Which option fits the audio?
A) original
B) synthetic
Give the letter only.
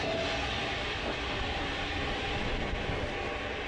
A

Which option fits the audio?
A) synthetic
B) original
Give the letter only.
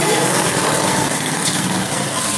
A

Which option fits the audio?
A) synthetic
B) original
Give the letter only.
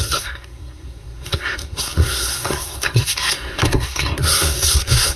A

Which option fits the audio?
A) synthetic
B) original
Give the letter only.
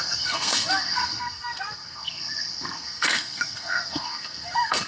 A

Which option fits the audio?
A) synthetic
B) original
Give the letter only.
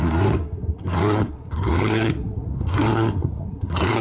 A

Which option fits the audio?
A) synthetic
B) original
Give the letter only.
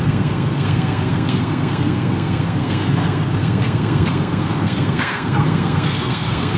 A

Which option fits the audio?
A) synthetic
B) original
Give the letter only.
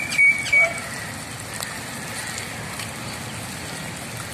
B